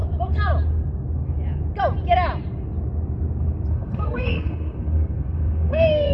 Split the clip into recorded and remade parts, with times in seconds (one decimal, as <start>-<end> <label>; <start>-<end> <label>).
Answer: 0.0-3.7 recorded; 3.7-6.1 remade